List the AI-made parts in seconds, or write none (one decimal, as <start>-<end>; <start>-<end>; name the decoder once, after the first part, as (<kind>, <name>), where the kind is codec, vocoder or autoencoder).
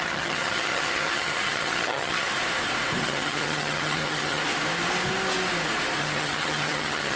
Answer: 0.0-2.3 (vocoder, HiFi-GAN); 3.0-4.4; 6.0-7.2